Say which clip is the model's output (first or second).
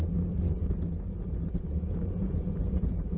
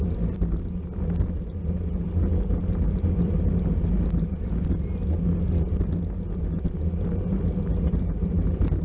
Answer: first